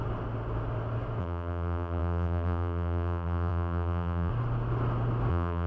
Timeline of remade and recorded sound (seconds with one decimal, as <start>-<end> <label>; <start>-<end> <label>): 0.0-1.2 recorded; 1.2-4.3 remade; 4.3-5.3 recorded; 5.3-5.7 remade